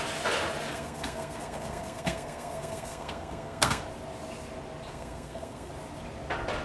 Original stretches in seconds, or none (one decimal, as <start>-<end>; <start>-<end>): 0.0-0.7; 3.8-4.9; 5.7-6.6